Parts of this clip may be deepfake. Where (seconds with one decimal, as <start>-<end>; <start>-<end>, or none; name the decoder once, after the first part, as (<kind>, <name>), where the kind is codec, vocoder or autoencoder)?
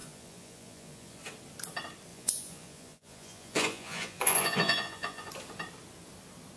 0.0-1.2 (vocoder, Vocos); 2.1-5.3